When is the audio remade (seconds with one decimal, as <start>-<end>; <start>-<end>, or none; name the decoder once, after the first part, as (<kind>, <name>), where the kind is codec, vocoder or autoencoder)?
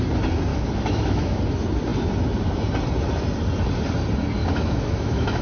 0.5-1.4 (autoencoder, DAC-VAE); 4.4-5.4